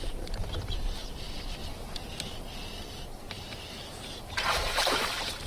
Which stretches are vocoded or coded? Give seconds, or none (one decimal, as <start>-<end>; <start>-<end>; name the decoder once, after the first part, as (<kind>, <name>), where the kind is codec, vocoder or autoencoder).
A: 0.0-1.6 (vocoder, BigVGAN v2); 3.0-3.5; 4.3-5.5